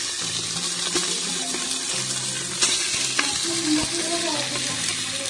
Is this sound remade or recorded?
recorded